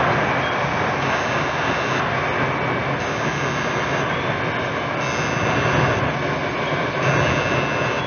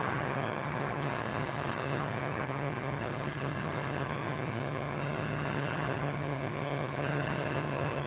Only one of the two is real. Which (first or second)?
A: first